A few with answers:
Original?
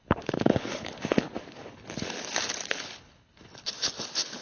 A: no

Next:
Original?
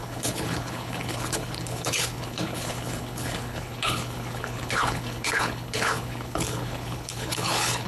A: no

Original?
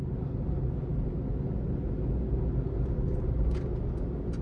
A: yes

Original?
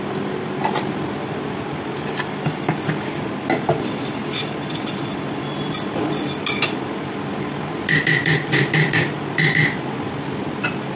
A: yes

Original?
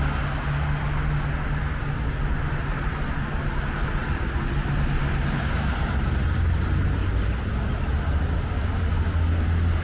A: yes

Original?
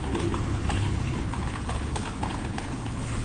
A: no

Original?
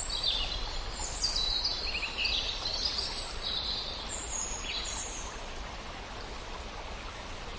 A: yes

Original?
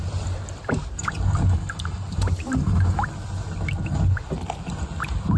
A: yes